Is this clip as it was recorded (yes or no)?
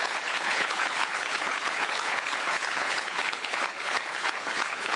no